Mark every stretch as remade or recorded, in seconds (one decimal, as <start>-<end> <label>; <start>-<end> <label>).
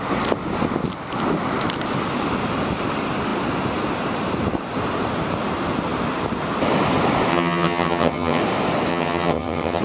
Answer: 0.0-7.3 recorded; 7.3-8.4 remade; 8.4-8.9 recorded; 8.9-9.8 remade